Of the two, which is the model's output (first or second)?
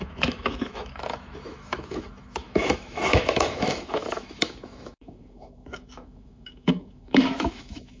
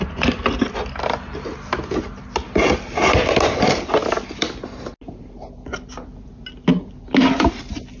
first